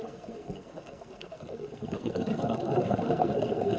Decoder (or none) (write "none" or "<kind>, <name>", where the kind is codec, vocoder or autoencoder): codec, SNAC